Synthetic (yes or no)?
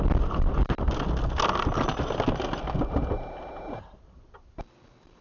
no